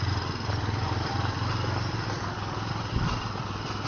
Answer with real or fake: real